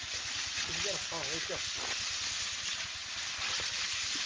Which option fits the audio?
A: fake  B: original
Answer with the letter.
B